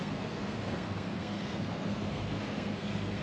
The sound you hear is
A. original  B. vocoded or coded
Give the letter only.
B